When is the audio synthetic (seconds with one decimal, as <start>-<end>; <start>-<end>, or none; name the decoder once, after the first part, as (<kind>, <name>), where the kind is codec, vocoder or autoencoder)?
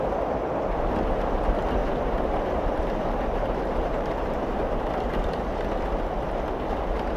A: 1.8-4.8 (vocoder, BigVGAN v2)